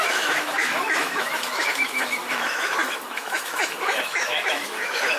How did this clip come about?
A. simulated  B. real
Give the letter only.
A